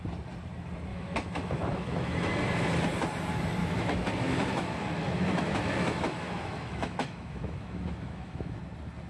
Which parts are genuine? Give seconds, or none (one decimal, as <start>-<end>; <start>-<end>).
0.0-0.9; 2.3-3.6; 8.6-9.1